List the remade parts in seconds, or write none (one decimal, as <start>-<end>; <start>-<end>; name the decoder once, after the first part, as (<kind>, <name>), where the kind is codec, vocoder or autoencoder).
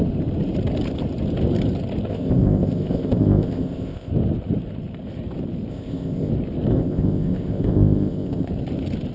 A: 2.1-4.1 (codec, ZipCodec); 5.7-6.3; 6.7-8.5